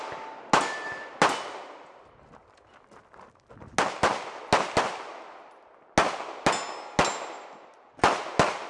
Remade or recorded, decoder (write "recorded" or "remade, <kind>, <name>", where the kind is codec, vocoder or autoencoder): recorded